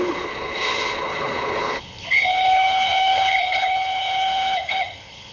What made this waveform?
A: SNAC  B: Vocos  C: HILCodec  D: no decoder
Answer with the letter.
C